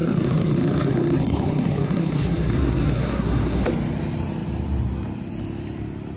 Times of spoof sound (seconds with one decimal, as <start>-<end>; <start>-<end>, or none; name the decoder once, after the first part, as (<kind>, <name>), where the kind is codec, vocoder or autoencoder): 0.0-3.7 (codec, SNAC)